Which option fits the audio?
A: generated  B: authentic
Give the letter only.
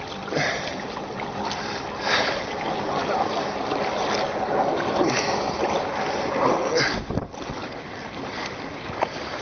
B